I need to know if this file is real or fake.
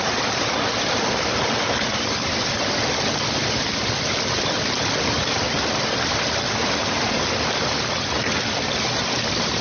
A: real